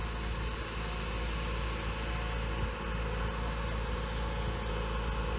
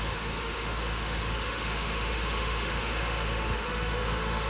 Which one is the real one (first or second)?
first